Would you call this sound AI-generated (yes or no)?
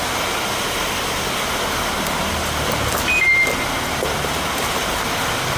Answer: no